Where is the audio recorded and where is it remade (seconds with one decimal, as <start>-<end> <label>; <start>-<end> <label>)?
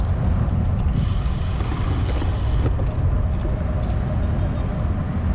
0.0-1.7 remade; 1.7-5.3 recorded